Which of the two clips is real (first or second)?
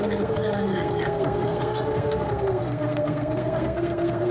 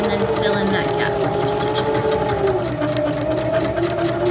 second